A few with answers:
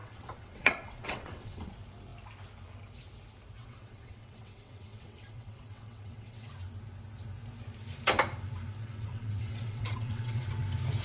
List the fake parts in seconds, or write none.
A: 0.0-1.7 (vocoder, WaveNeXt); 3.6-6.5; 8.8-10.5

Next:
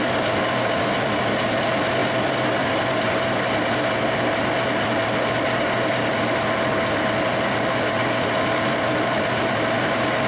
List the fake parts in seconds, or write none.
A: 2.0-3.2 (vocoder, BigVGAN v2)